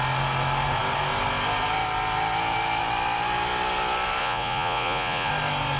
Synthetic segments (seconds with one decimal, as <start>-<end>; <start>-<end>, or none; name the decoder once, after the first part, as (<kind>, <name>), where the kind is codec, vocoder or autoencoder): 4.2-5.3 (vocoder, Vocos)